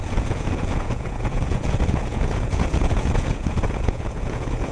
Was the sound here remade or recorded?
remade